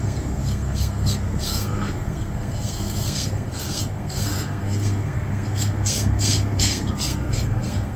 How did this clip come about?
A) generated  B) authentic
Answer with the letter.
A